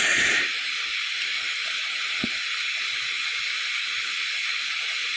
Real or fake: real